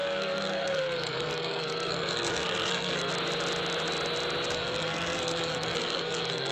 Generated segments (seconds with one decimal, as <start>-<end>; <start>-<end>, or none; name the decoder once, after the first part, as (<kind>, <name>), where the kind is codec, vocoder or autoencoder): 0.0-3.1 (codec, SNAC); 4.5-6.5